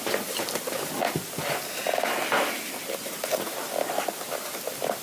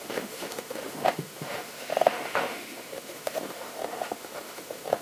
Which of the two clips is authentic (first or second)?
first